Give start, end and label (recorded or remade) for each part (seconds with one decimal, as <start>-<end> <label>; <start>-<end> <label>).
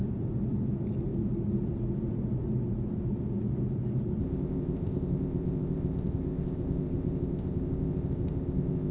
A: 0.0-4.2 recorded; 4.2-8.9 remade